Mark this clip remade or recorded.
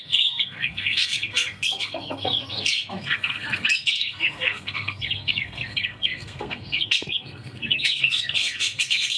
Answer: remade